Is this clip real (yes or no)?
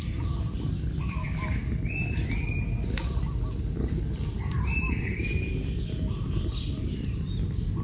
yes